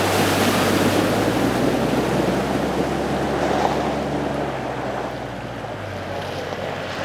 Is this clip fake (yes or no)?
no